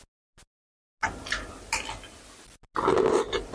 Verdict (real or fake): real